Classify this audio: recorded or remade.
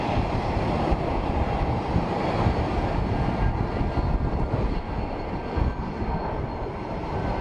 recorded